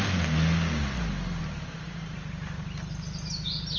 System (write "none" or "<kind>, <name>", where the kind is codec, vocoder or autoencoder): none